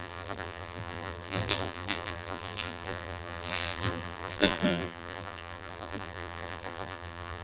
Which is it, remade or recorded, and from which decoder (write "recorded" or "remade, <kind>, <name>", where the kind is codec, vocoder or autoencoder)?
remade, vocoder, BigVGAN v2